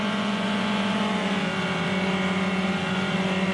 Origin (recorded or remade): remade